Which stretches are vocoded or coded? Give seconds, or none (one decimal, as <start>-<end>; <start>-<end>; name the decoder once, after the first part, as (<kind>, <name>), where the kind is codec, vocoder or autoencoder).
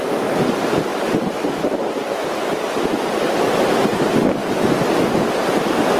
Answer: 0.9-2.7 (vocoder, BigVGAN v2)